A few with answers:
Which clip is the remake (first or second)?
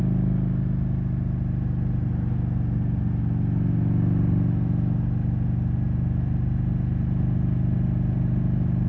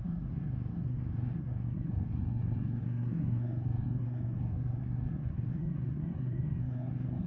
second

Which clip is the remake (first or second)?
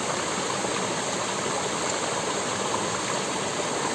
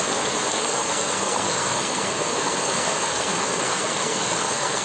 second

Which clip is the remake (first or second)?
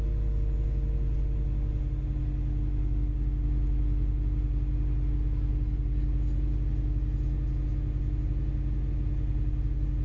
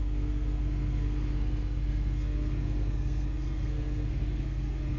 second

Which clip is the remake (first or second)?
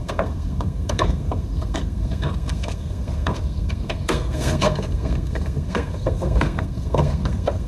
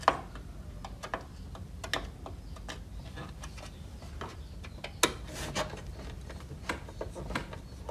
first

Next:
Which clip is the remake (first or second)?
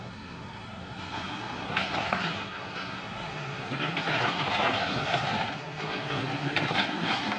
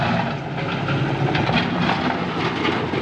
first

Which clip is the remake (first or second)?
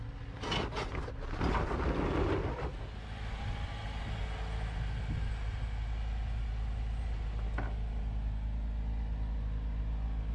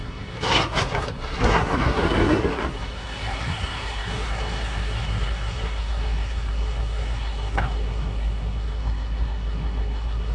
second